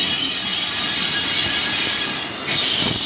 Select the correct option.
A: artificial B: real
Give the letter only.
B